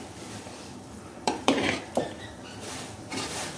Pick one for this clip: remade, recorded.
remade